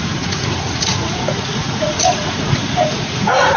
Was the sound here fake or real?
fake